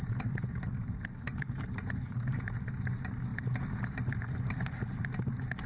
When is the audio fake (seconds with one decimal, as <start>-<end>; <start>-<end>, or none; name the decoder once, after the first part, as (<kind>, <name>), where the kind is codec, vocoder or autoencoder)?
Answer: 0.8-2.4 (vocoder, BigVGAN v2)